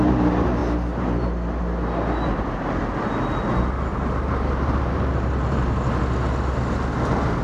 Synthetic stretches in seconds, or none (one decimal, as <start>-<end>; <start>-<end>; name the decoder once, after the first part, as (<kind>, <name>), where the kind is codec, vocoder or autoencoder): 3.9-6.0 (vocoder, BigVGAN v2)